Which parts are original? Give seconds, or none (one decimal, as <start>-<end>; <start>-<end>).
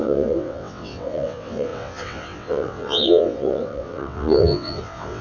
none